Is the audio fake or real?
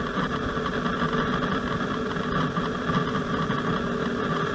real